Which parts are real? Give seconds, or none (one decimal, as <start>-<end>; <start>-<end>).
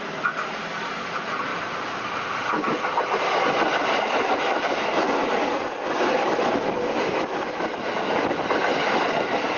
none